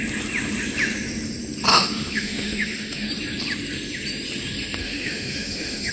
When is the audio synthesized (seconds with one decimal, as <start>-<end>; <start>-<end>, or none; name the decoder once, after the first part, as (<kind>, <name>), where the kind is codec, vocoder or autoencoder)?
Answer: 1.7-3.1 (autoencoder, DAC-VAE); 4.8-5.9